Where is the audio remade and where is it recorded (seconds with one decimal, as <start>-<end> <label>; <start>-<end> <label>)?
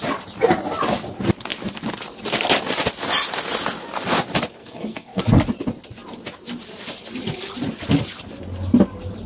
0.0-4.6 recorded; 4.6-5.2 remade; 5.2-9.3 recorded